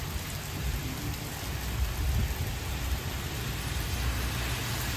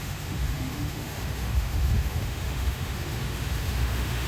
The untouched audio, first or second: first